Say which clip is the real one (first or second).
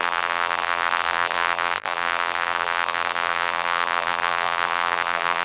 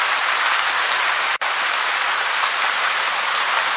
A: second